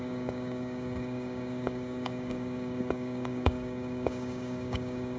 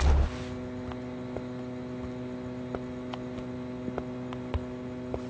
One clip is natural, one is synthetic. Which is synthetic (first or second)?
first